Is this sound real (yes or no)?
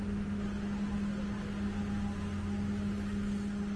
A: yes